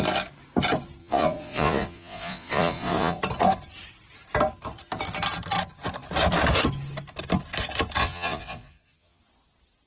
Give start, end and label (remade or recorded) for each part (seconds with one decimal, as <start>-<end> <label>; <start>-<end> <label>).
0.0-1.0 recorded; 1.0-3.2 remade; 3.2-8.0 recorded; 8.0-9.2 remade; 9.2-9.9 recorded